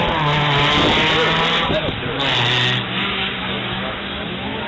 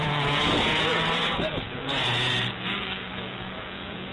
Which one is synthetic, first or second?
second